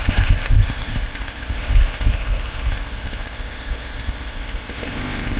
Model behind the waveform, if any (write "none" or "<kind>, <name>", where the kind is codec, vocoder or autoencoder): codec, ZipCodec